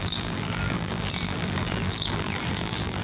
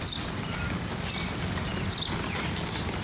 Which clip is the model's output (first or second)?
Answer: first